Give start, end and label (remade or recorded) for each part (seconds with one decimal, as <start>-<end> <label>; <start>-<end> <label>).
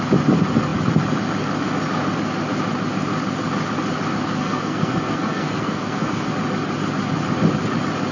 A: 0.0-4.4 recorded; 4.4-6.3 remade; 6.3-8.1 recorded